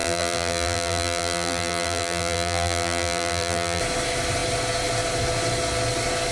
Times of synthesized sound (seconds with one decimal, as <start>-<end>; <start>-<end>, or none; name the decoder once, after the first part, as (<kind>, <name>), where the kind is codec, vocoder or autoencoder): 0.0-3.8 (vocoder, BigVGAN v2)